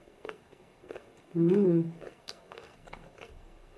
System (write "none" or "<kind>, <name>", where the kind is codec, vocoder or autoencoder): codec, SNAC